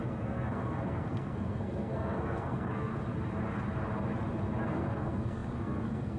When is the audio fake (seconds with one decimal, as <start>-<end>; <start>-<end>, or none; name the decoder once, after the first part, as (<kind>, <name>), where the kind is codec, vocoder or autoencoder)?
0.0-2.9 (codec, SNAC); 4.6-6.2